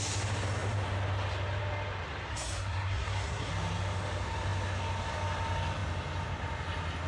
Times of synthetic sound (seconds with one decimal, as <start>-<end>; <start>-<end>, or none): 2.3-3.5